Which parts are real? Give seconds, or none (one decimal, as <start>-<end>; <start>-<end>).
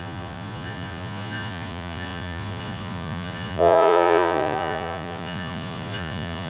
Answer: none